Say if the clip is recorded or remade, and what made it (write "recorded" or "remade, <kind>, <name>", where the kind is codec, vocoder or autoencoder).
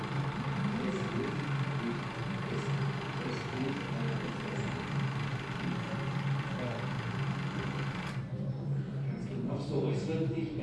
recorded